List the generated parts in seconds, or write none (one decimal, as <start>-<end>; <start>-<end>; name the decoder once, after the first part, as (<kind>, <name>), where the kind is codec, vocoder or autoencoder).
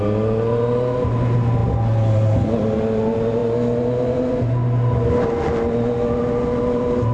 none